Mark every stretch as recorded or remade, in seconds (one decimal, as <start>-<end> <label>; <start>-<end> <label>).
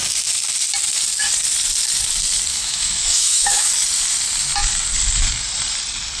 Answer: 0.0-2.5 recorded; 2.5-3.7 remade; 3.7-6.2 recorded